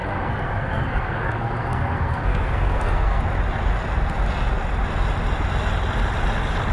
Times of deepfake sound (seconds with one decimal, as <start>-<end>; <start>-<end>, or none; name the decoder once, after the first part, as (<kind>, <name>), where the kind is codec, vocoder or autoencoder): 0.0-3.2 (codec, SNAC)